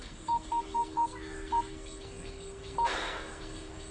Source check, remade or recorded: remade